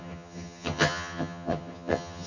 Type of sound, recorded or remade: remade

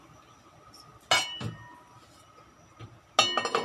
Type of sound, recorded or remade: recorded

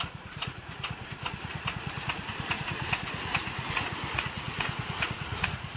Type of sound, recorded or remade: remade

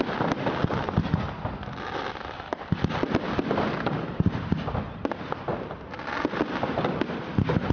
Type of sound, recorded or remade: recorded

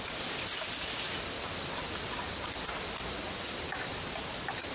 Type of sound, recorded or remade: recorded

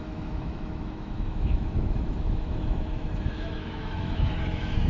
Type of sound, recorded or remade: remade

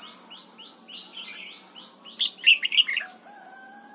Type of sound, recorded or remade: recorded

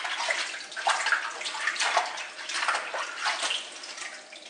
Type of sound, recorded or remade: recorded